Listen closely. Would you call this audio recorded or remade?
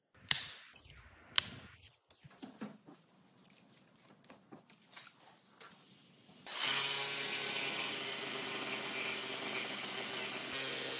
recorded